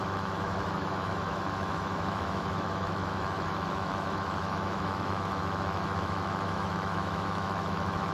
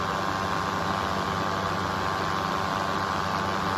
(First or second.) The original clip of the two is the second